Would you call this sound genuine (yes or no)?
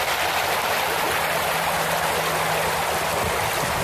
yes